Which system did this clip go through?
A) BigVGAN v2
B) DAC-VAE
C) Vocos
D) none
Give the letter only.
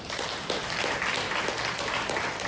D